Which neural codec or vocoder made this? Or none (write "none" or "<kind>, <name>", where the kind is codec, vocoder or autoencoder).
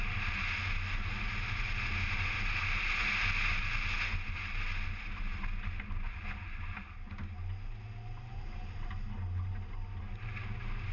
none